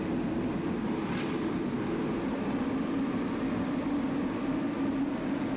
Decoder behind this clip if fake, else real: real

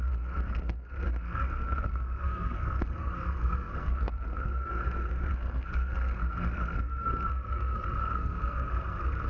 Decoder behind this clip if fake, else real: fake, codec, SNAC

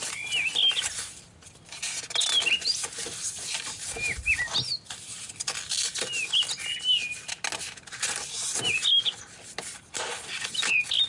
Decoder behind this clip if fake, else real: real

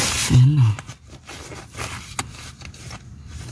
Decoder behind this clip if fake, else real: real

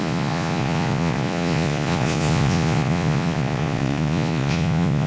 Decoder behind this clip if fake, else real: fake, vocoder, Vocos